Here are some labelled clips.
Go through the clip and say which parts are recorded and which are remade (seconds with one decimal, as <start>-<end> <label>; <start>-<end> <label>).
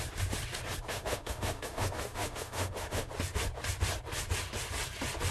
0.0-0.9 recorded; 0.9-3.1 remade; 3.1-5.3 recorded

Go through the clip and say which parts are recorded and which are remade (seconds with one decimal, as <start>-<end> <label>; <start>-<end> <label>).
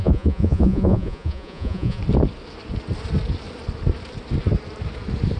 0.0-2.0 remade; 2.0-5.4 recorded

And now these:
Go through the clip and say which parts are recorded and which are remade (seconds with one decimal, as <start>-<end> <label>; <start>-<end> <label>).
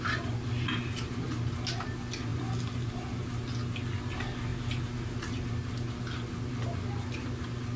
0.0-7.8 recorded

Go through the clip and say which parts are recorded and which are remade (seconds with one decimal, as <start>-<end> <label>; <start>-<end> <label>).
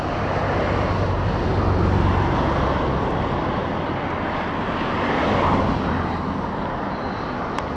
0.0-7.8 recorded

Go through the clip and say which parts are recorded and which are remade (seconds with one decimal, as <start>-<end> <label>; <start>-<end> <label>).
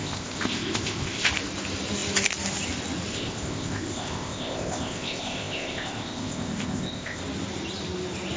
0.0-1.3 remade; 1.3-3.1 recorded; 3.1-7.2 remade; 7.2-8.4 recorded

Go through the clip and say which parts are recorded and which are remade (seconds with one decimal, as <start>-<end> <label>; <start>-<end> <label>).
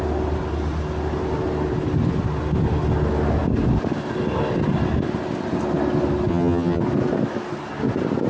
0.0-6.3 recorded; 6.3-6.8 remade; 6.8-8.3 recorded